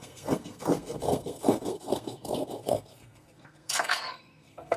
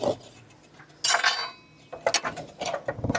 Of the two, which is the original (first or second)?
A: second